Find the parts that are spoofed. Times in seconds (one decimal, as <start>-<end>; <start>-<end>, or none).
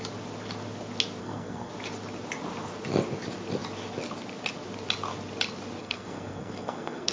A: 1.2-1.7; 5.8-7.1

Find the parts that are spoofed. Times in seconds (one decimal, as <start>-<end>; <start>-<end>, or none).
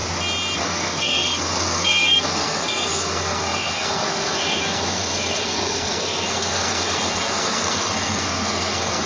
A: 0.6-9.1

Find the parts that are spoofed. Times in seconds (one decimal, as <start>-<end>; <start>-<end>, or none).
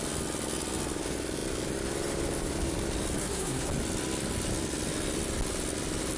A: 3.2-3.7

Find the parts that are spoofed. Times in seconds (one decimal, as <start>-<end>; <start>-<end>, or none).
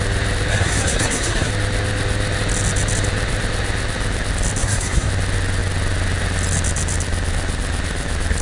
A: 0.5-1.5; 4.6-5.1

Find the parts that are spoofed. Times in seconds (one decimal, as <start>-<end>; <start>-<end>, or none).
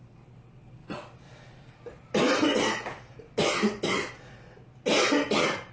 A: none